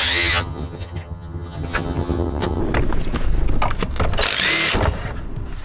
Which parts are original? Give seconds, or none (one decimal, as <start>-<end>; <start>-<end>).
2.6-5.6